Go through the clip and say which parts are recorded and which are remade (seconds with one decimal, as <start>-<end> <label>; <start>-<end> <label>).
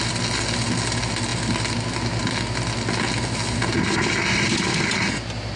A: 0.0-5.6 recorded